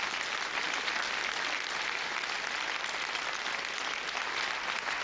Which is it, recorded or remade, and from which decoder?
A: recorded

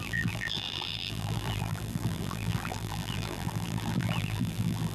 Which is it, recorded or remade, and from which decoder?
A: remade, vocoder, BigVGAN v2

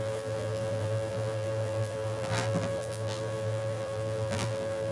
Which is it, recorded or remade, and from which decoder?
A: remade, vocoder, BigVGAN v2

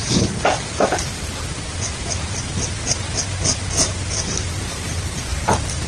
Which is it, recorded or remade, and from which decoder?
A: remade, vocoder, BigVGAN v2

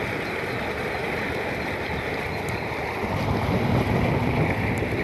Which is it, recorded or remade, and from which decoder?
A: recorded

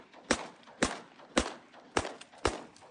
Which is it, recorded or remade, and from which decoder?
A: recorded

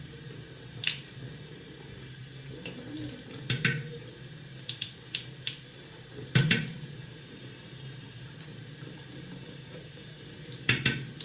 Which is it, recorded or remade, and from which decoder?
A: remade, vocoder, BigVGAN v2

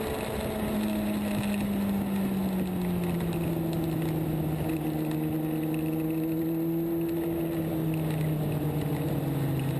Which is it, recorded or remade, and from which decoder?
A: recorded